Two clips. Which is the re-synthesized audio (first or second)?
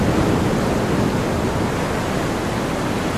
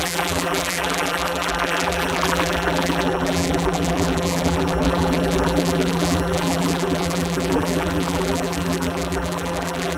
second